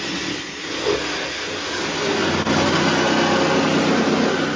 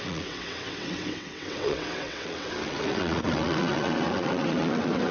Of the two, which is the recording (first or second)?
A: first